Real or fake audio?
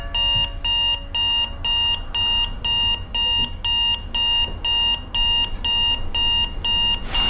real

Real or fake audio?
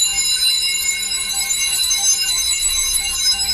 fake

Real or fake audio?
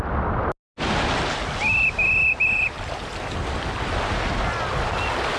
real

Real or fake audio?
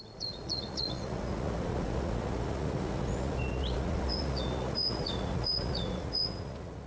fake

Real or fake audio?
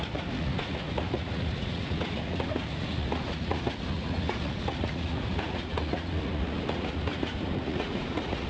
fake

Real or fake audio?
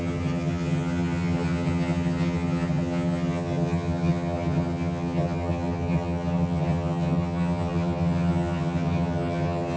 fake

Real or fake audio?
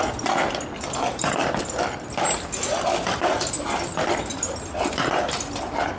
real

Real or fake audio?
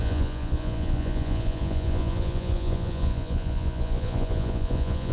fake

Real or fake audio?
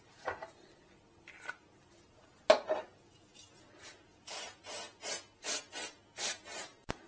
real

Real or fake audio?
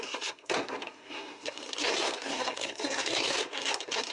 fake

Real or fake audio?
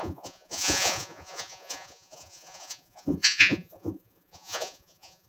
fake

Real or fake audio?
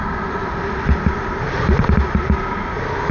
real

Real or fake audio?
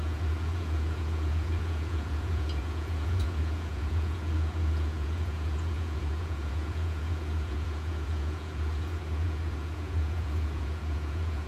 fake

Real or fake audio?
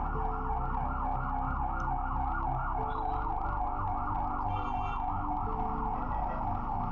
real